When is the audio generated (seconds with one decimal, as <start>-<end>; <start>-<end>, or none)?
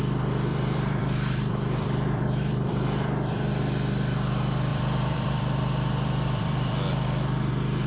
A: 0.5-3.6; 4.7-7.5